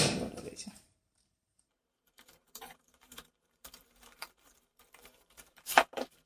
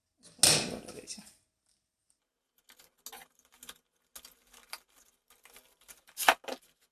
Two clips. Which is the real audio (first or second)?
second